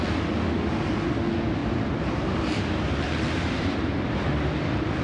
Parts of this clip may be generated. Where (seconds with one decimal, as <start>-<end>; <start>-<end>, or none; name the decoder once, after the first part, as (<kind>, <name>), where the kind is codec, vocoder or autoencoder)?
1.6-4.6 (vocoder, BigVGAN v2)